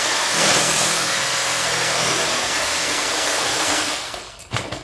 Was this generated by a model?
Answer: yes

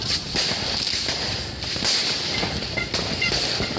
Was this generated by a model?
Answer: yes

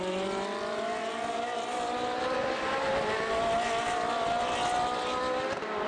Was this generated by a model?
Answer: no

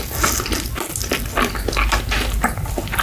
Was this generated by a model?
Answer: no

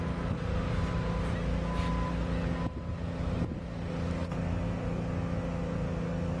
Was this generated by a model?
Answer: no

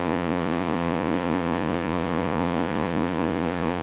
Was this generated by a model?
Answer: yes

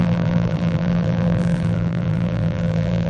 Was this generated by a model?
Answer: yes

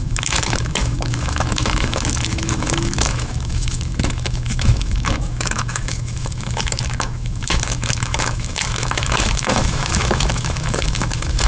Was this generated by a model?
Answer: yes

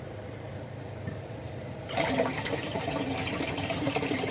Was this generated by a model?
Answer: yes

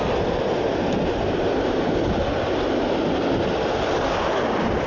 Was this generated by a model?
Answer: no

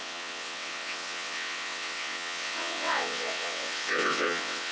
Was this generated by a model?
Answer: yes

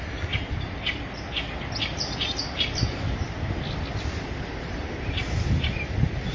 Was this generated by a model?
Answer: no